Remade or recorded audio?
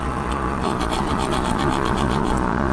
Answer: remade